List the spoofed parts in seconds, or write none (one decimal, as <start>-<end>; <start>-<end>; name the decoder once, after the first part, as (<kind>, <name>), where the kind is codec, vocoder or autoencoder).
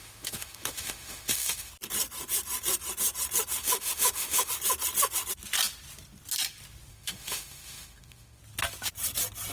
0.0-1.7 (autoencoder, DAC-VAE); 3.6-4.5; 6.9-8.4